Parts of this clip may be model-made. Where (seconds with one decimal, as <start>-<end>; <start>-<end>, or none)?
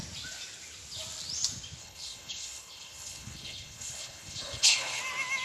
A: 1.8-5.0